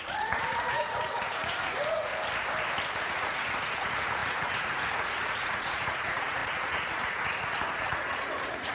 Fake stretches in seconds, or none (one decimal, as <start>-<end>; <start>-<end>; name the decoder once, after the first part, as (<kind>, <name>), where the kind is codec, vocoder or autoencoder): 0.0-2.1 (vocoder, Vocos); 3.0-8.7